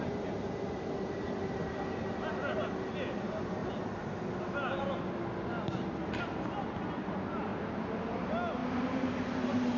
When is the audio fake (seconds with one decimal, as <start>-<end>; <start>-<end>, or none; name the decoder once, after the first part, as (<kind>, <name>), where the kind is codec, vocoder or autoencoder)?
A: none